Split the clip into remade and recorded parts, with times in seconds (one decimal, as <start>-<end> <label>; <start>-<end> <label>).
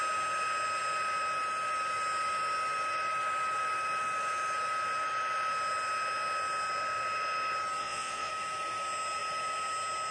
0.0-7.8 recorded; 7.8-8.3 remade; 8.3-10.1 recorded